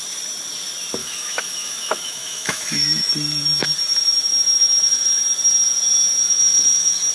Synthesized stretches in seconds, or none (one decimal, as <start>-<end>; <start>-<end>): 1.0-3.1; 4.6-5.2; 6.2-7.1